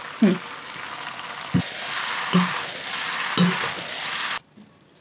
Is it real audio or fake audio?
real